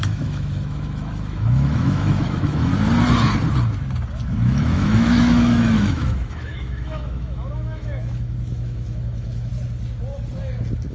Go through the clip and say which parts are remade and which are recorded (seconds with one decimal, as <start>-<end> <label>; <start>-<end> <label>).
0.0-2.7 remade; 2.7-4.4 recorded; 4.4-9.5 remade; 9.5-10.9 recorded